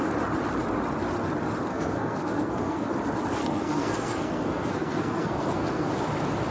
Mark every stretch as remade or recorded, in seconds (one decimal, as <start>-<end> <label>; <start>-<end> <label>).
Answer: 0.0-1.7 recorded; 1.7-2.9 remade; 2.9-3.4 recorded; 3.4-5.9 remade; 5.9-6.5 recorded